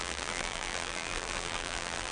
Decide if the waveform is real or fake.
fake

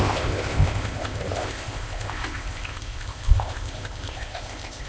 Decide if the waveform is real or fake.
fake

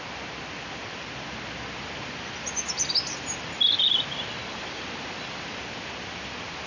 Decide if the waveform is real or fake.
real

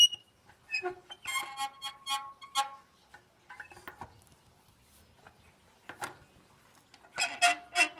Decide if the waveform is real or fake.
real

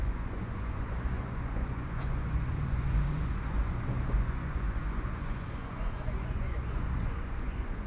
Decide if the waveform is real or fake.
fake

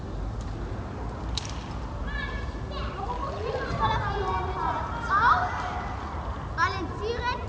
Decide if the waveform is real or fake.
real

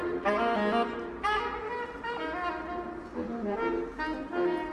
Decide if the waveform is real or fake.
fake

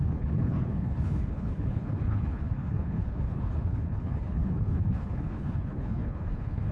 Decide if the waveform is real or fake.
fake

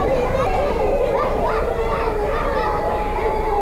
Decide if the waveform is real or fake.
fake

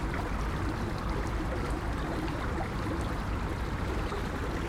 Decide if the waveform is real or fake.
fake